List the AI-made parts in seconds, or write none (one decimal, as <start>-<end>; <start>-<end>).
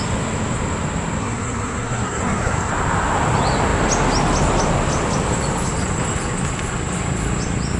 1.2-2.7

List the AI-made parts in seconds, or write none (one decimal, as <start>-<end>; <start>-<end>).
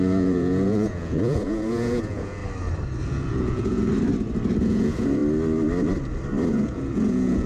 0.0-2.4; 3.1-3.9; 4.6-5.2; 6.5-7.5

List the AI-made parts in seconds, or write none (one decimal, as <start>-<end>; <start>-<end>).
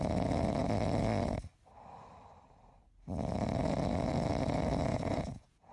4.9-5.7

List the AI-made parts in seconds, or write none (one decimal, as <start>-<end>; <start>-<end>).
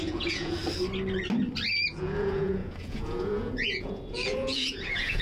0.0-0.6; 1.9-5.2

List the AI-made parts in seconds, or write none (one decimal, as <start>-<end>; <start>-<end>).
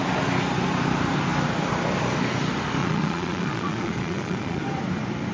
2.8-4.6